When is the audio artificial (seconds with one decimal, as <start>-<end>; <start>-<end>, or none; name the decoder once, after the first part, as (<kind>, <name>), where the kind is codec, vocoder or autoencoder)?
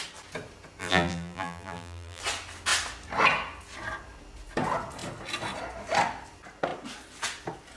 0.8-2.2 (vocoder, BigVGAN v2)